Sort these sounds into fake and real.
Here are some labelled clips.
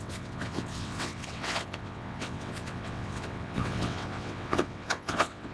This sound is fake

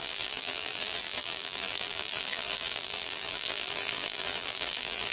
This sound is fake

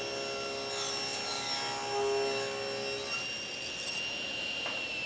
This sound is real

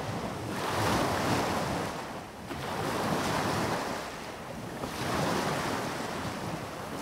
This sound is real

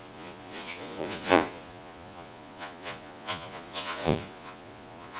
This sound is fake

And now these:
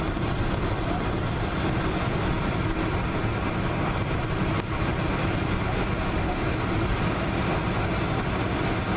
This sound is real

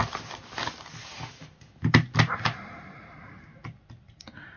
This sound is real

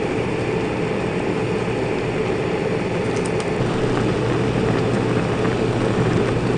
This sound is real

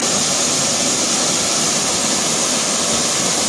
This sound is real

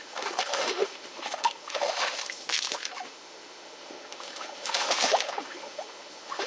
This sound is fake